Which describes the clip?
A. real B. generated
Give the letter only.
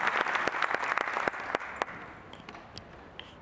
A